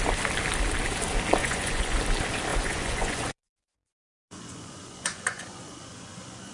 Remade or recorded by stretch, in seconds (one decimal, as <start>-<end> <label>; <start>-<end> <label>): 0.0-1.4 recorded; 1.4-2.0 remade; 2.0-2.5 recorded; 2.5-6.5 remade

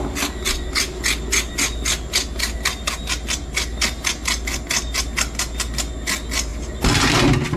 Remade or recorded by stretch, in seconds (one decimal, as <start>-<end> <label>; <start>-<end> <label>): 0.0-7.6 recorded

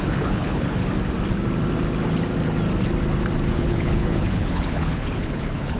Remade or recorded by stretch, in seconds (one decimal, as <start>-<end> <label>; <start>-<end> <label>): 0.0-0.8 remade; 0.8-3.5 recorded; 3.5-5.8 remade

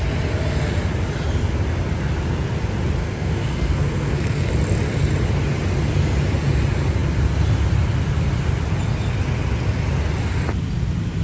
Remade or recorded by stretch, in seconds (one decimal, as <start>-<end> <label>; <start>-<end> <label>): 0.0-3.0 recorded; 3.0-4.5 remade; 4.5-11.2 recorded

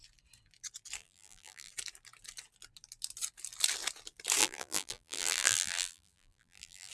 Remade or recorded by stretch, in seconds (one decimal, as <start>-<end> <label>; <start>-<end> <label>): 0.0-1.0 recorded; 1.0-1.7 remade; 1.7-4.4 recorded; 4.4-6.9 remade

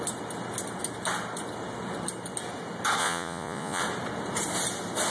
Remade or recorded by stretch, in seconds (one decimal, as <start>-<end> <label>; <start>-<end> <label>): 0.0-3.0 recorded; 3.0-3.8 remade; 3.8-5.1 recorded

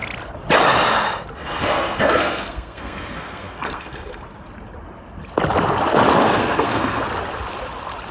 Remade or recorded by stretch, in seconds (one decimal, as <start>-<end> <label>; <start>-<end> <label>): 0.0-1.4 recorded; 1.4-4.2 remade; 4.2-6.2 recorded; 6.2-7.0 remade; 7.0-8.1 recorded

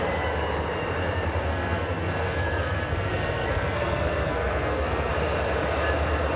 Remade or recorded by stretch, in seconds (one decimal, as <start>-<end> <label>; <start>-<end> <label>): 0.0-1.5 recorded; 1.5-5.1 remade; 5.1-6.4 recorded